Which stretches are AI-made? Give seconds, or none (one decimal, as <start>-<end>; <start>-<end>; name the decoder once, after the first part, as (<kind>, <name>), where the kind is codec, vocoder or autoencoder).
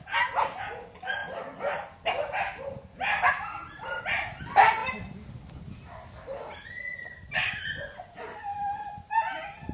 7.4-8.2 (vocoder, Vocos)